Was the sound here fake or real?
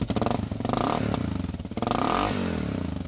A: real